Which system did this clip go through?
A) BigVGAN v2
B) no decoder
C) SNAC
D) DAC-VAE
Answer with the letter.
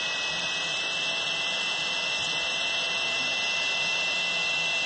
B